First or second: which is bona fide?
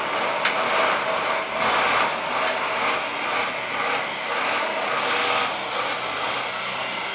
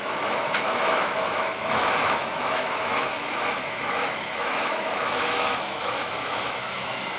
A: first